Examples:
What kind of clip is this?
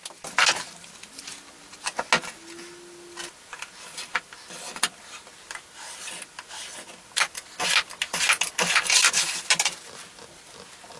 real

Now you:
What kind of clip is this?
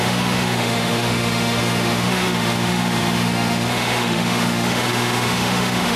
fake